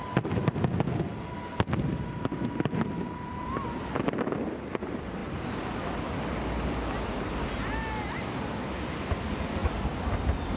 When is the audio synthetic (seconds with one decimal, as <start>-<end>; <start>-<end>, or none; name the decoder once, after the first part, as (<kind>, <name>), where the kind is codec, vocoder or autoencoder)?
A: none